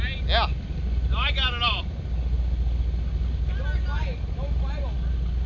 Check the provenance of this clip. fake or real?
real